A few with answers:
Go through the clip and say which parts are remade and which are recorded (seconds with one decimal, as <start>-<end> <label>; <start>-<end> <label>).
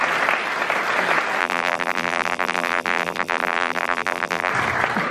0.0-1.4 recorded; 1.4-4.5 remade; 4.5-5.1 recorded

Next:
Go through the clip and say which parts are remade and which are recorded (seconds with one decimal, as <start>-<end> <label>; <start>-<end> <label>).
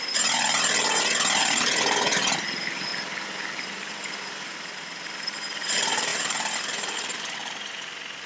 0.0-2.9 remade; 2.9-3.6 recorded; 3.6-8.3 remade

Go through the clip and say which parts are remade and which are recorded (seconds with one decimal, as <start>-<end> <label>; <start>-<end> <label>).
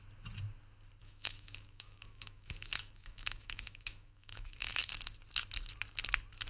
0.0-1.0 recorded; 1.0-4.9 remade; 4.9-6.5 recorded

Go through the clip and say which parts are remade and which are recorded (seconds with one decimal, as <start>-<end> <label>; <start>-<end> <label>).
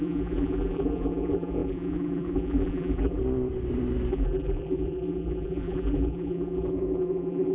0.0-3.2 remade; 3.2-4.1 recorded; 4.1-7.5 remade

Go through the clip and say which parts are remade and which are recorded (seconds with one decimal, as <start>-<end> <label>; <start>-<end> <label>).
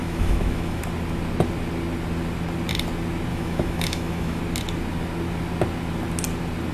0.0-0.8 remade; 0.8-3.3 recorded; 3.3-4.4 remade; 4.4-6.7 recorded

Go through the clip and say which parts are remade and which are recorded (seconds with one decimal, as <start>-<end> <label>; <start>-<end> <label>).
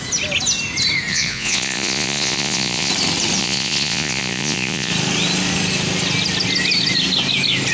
0.0-1.1 recorded; 1.1-2.9 remade; 2.9-3.4 recorded; 3.4-4.9 remade; 4.9-7.7 recorded